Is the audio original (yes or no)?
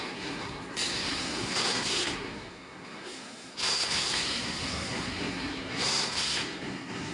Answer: no